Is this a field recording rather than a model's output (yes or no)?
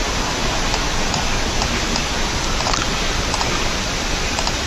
yes